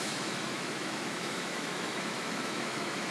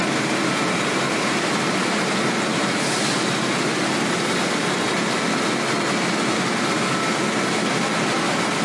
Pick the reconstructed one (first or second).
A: first